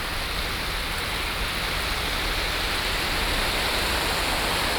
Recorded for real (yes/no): yes